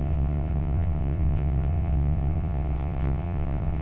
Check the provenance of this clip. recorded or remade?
remade